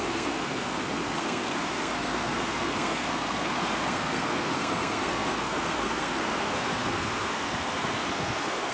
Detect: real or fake fake